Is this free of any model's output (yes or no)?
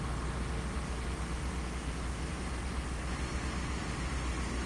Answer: yes